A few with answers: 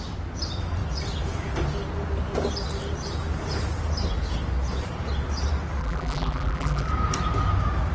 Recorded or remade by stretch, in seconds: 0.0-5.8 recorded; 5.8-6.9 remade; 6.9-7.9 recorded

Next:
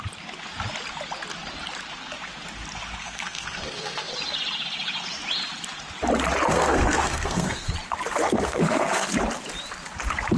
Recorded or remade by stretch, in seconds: 0.0-3.0 recorded; 3.0-4.1 remade; 4.1-6.5 recorded; 6.5-7.7 remade; 7.7-8.2 recorded; 8.2-9.1 remade; 9.1-10.4 recorded

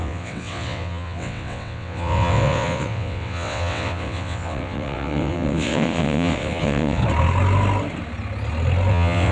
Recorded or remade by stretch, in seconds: 0.0-7.0 remade; 7.0-8.9 recorded; 8.9-9.3 remade

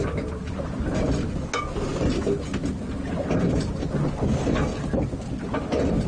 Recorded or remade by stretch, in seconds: 0.0-6.1 recorded

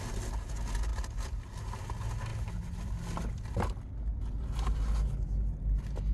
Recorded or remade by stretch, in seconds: 0.0-6.1 recorded

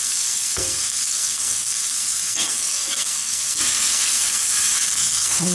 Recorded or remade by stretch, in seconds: 0.0-5.5 remade